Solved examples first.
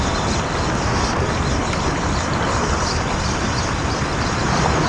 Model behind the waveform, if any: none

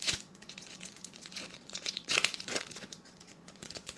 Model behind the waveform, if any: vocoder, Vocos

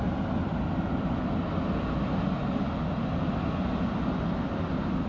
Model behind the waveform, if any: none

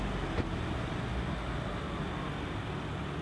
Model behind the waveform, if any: none